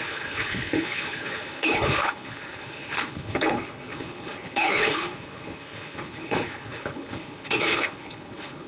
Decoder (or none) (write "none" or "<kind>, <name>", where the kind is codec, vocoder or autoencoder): codec, HILCodec